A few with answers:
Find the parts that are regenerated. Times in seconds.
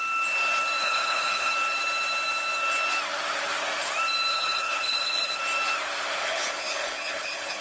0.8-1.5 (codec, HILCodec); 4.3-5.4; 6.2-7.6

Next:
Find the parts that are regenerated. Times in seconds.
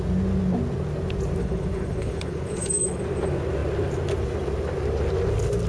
1.4-3.0 (codec, HILCodec)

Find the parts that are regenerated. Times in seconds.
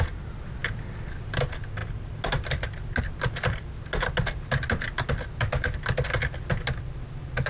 none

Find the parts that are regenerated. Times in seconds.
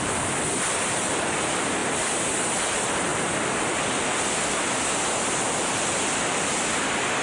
none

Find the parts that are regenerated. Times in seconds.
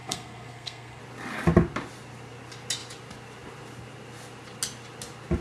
0.0-1.0 (codec, SNAC)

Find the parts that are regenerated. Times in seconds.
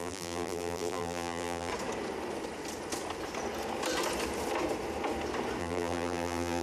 0.0-1.7 (vocoder, BigVGAN v2); 5.6-6.6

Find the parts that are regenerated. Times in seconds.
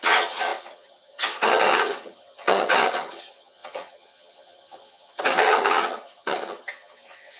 0.0-7.4 (vocoder, HiFi-GAN)